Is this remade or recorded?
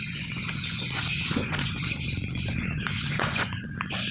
remade